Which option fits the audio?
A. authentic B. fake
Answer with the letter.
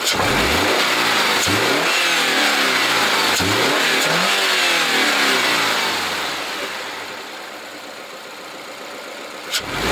A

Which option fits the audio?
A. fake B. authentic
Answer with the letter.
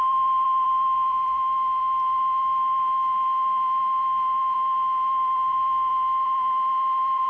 A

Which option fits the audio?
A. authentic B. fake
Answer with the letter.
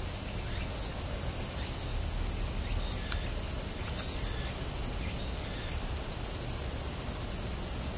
A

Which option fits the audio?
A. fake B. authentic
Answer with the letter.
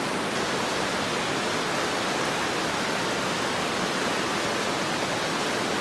B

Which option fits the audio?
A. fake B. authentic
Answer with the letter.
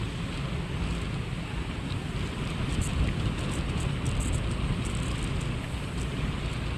B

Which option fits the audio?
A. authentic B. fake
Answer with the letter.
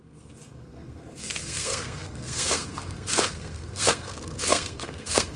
B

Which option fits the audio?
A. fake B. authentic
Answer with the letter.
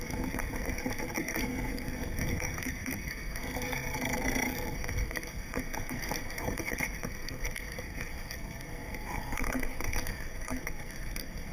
A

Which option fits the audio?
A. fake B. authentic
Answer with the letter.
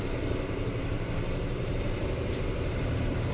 A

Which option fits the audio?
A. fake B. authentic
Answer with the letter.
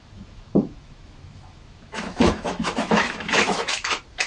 A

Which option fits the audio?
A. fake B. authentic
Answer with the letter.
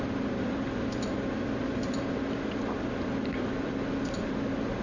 B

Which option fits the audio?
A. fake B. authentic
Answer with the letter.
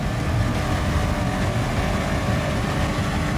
B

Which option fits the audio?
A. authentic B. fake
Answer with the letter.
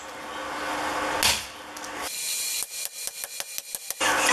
A